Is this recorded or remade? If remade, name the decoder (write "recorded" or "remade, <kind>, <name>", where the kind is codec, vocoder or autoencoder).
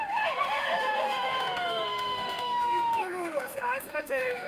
remade, autoencoder, DAC-VAE